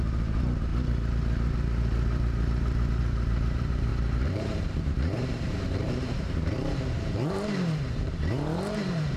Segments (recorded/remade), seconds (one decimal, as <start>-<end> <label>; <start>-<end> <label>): 0.0-0.7 remade; 0.7-3.0 recorded; 3.0-9.2 remade